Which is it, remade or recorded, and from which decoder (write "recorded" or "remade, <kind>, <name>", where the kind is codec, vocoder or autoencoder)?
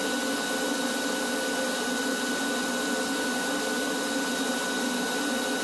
recorded